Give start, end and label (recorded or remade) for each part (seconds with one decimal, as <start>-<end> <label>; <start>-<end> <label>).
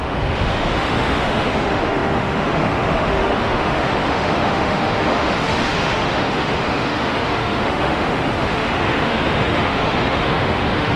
0.0-11.0 remade